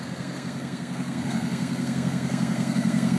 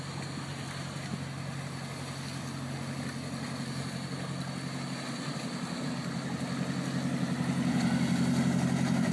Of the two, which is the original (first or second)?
second